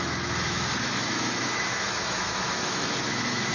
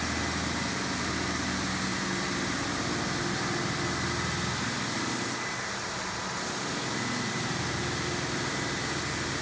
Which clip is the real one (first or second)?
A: second